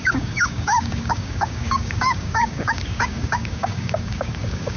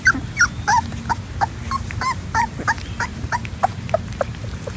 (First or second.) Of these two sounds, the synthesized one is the first